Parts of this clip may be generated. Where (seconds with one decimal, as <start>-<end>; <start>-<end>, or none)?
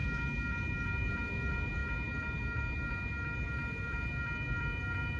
none